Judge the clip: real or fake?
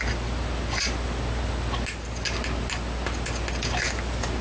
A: real